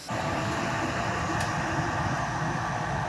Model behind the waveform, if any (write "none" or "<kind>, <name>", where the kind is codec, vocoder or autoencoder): none